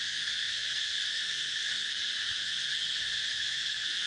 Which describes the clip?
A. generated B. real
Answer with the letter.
A